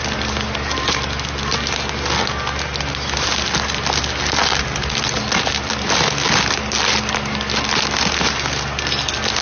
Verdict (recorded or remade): recorded